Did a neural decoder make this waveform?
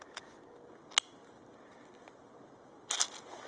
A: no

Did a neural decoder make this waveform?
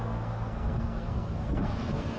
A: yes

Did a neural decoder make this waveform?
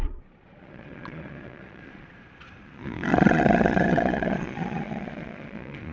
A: yes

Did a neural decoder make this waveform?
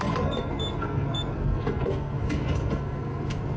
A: yes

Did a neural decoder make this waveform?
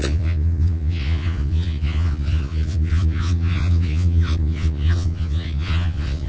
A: yes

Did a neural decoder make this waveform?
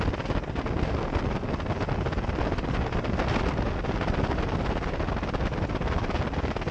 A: no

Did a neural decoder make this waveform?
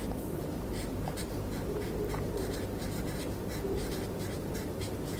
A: yes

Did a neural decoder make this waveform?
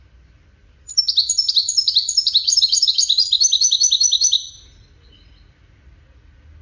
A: no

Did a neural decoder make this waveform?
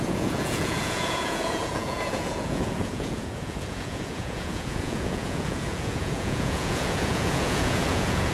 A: yes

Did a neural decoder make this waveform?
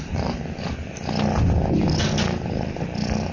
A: no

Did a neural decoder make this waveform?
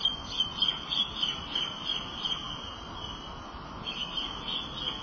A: no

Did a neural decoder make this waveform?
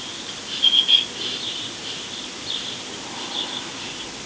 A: no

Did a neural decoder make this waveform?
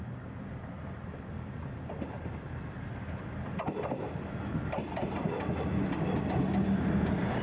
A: no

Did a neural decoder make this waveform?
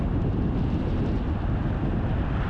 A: no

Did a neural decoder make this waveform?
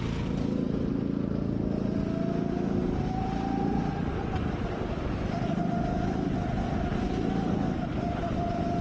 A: no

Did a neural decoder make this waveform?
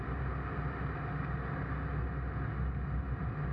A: no